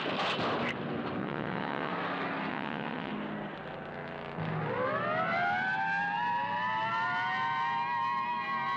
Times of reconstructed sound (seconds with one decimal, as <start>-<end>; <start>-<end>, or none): 1.2-1.9; 2.5-3.1